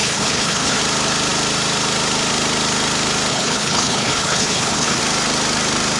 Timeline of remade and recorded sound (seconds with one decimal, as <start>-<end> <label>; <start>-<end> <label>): 0.0-0.8 remade; 0.8-3.3 recorded; 3.3-5.0 remade; 5.0-6.0 recorded